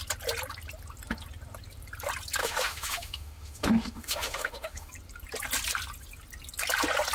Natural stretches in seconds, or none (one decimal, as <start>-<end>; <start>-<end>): 0.0-2.4; 4.9-7.1